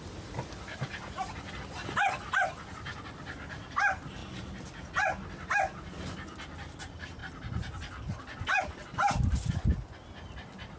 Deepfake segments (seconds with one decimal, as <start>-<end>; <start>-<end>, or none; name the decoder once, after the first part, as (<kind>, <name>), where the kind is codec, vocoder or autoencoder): none